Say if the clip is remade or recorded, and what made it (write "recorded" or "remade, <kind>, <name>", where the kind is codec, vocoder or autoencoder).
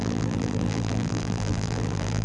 remade, vocoder, BigVGAN v2